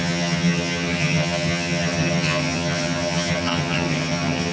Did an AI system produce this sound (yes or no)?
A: yes